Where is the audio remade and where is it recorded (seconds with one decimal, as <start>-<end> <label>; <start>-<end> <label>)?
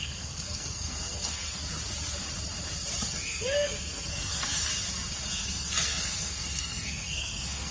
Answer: 0.0-1.6 remade; 1.6-3.1 recorded; 3.1-4.7 remade; 4.7-5.3 recorded; 5.3-7.7 remade